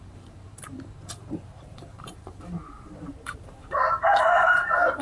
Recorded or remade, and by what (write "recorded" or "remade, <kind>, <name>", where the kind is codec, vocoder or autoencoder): remade, vocoder, BigVGAN v2